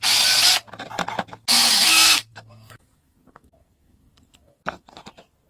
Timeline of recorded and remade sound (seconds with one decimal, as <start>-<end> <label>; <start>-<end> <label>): 0.0-1.7 recorded; 1.7-5.0 remade; 5.0-5.5 recorded